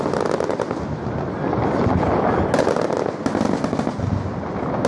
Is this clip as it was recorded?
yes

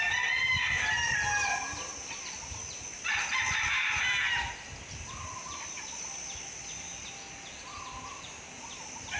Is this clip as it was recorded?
yes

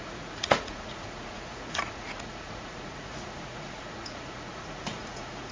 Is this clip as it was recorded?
no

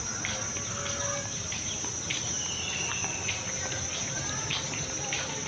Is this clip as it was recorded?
yes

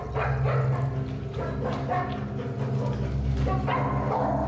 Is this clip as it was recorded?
yes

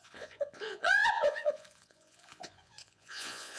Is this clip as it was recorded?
no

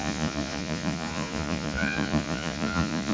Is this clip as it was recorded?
no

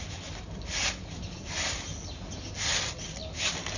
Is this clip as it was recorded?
yes